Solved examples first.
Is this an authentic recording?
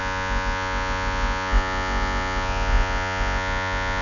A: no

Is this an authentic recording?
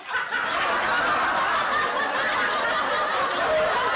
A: yes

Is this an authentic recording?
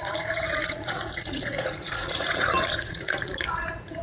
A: no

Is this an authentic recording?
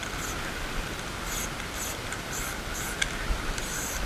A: yes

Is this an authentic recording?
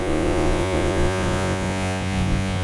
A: no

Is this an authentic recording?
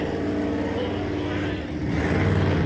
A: yes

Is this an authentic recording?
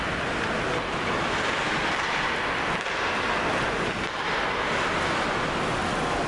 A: yes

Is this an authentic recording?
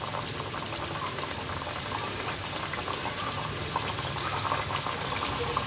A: yes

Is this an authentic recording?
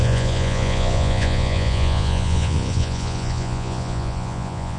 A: no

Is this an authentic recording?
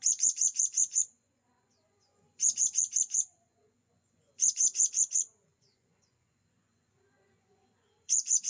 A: no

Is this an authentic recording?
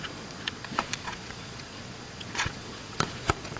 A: no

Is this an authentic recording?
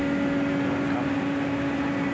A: yes